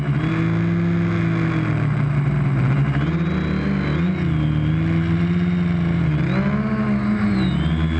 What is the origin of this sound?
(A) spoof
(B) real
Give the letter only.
B